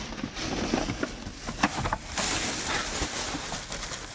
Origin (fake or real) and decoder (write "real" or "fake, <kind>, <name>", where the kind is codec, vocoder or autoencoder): real